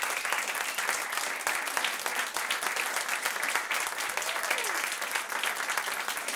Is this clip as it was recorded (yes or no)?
yes